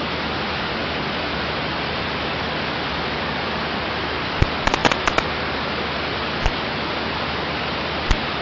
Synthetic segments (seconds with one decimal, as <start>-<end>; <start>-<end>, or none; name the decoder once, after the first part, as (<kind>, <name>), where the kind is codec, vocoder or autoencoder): none